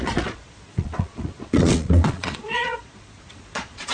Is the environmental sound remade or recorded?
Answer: remade